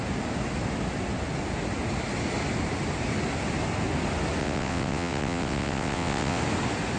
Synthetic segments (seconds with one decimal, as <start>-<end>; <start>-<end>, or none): 4.4-6.4